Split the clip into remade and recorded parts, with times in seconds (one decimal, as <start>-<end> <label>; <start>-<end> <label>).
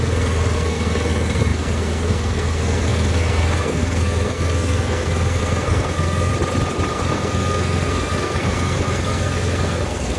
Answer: 0.0-6.3 remade; 6.3-6.9 recorded; 6.9-10.2 remade